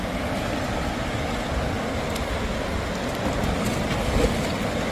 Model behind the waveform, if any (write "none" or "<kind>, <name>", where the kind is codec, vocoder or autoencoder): none